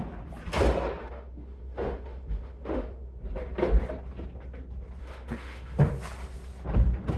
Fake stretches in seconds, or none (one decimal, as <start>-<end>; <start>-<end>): 1.0-3.2; 5.0-5.9